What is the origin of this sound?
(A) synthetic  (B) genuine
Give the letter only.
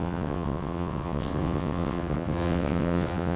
A